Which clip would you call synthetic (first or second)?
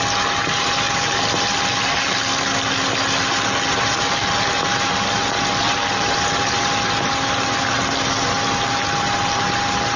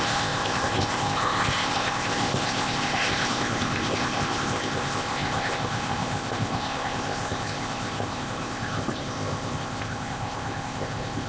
second